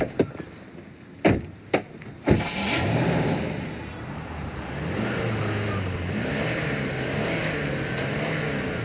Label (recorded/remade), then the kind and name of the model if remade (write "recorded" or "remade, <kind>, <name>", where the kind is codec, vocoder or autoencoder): recorded